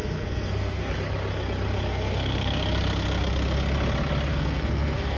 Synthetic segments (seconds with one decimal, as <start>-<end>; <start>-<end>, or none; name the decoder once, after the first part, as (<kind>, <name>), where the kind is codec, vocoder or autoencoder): 0.0-0.9 (codec, SNAC); 1.9-2.6; 4.3-5.2